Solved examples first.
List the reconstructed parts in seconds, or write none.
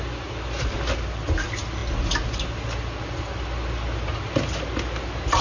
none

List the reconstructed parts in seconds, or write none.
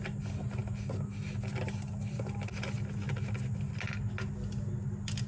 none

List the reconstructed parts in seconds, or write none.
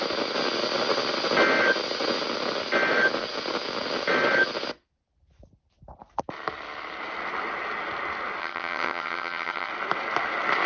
8.4-9.7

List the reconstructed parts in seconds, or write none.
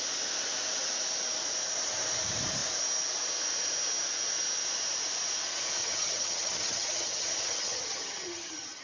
5.8-8.8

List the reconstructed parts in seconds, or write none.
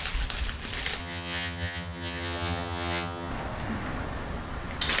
1.0-3.3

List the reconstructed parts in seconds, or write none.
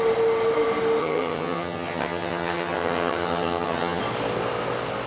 1.0-4.0